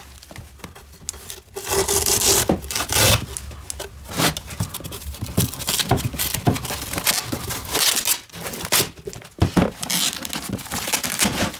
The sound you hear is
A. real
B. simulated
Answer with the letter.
A